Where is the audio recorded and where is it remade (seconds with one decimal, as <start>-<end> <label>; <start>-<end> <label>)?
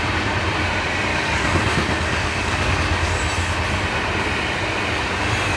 0.0-1.1 recorded; 1.1-2.7 remade; 2.7-5.6 recorded